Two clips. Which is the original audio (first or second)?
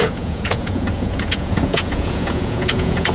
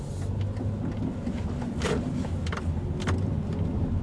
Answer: second